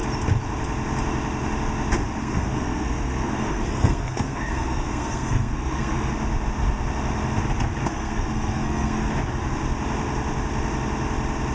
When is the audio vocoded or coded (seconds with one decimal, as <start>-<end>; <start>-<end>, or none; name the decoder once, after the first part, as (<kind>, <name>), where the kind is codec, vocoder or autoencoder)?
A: 2.2-6.1 (codec, SNAC); 7.8-9.1

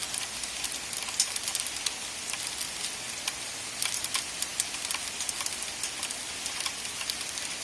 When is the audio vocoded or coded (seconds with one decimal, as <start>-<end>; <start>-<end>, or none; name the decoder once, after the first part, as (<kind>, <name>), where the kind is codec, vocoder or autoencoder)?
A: none